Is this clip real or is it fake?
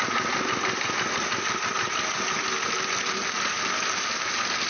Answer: real